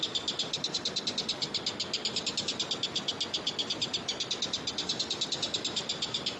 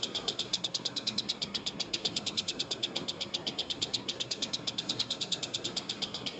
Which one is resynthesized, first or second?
second